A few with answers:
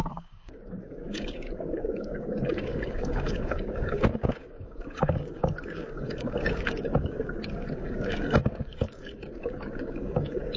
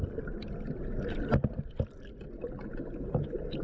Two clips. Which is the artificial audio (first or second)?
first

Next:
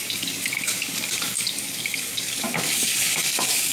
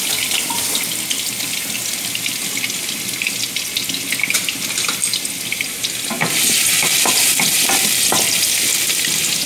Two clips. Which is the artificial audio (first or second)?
first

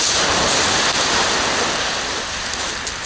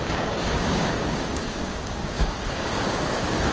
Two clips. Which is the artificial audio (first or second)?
second